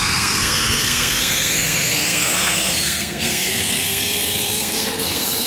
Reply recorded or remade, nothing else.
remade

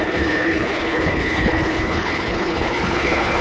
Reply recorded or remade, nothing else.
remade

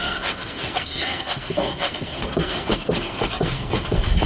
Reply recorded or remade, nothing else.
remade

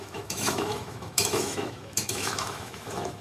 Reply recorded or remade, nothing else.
remade